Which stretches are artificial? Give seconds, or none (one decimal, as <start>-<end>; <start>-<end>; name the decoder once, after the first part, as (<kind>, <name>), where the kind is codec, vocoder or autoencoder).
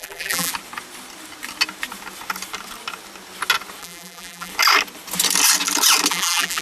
0.0-0.5 (vocoder, BigVGAN v2); 3.8-4.5; 6.1-6.6